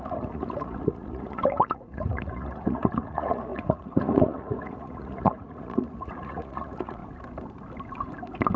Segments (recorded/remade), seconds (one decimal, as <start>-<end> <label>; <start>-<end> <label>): 0.0-7.0 remade; 7.0-8.6 recorded